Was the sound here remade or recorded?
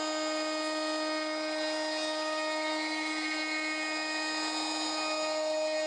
recorded